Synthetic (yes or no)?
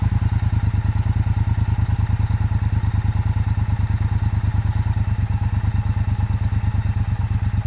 no